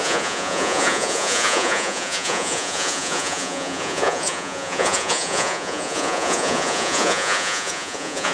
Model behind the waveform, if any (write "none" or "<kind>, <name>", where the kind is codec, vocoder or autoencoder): vocoder, Vocos